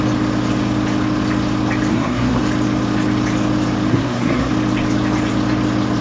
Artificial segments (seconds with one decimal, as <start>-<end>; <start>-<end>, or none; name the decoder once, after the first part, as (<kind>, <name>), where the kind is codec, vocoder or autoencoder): 1.9-2.4 (codec, SNAC); 3.9-4.5